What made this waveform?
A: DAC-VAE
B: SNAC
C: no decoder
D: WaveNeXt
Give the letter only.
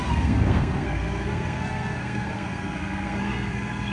B